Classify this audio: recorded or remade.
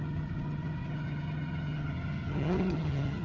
remade